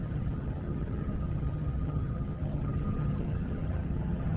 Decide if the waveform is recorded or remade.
remade